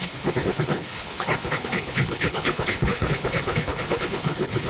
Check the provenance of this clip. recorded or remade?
remade